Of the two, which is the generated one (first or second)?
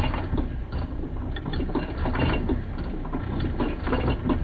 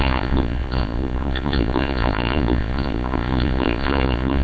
second